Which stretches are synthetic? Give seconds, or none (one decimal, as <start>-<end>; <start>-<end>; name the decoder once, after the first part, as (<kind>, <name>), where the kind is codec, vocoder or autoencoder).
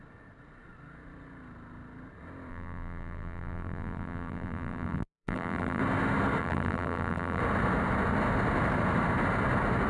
2.5-5.8 (vocoder, BigVGAN v2); 6.4-7.4